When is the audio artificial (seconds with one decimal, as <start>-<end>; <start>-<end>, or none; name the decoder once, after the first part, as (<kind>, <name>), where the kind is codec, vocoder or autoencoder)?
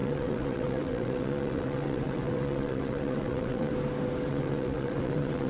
0.0-3.7 (vocoder, WaveNeXt); 4.3-5.5